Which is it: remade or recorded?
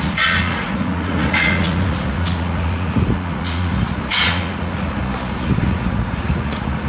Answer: remade